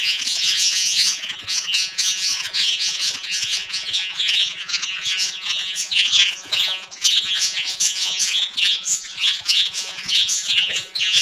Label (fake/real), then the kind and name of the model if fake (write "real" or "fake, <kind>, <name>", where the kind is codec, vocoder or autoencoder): fake, vocoder, Vocos